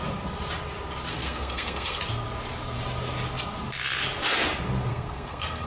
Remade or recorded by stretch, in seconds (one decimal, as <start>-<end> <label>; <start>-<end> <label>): 0.0-1.1 recorded; 1.1-2.0 remade; 2.0-4.9 recorded; 4.9-5.7 remade